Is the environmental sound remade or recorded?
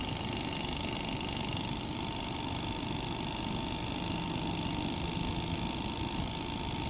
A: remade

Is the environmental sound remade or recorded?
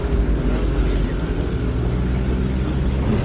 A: recorded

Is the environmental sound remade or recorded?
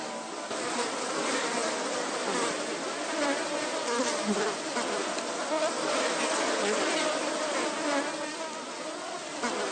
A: recorded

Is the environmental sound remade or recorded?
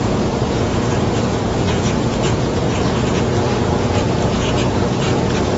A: remade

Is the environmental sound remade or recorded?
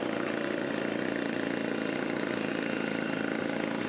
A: recorded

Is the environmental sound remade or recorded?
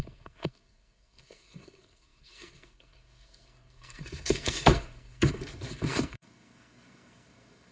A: remade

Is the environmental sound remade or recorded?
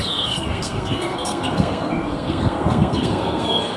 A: remade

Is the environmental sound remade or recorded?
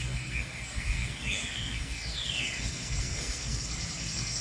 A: remade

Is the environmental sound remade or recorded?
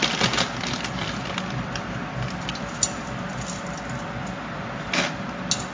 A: recorded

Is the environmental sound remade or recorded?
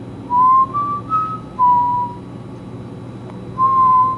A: recorded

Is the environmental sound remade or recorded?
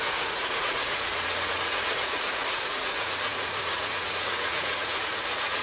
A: remade